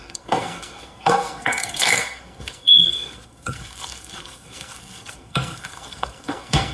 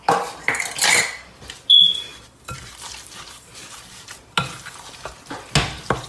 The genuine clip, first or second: second